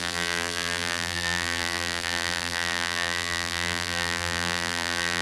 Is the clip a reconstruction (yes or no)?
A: yes